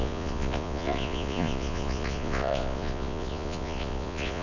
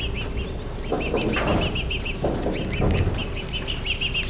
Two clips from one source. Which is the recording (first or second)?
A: second